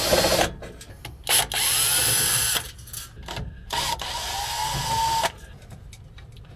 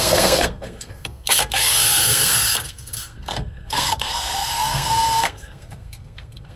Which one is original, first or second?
first